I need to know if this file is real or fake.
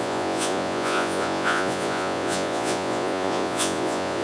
fake